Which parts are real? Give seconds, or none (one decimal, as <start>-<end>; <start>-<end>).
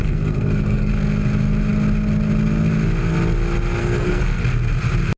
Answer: 0.9-3.8; 4.4-5.2